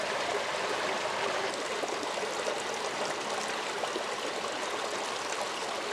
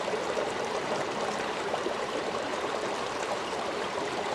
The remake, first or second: second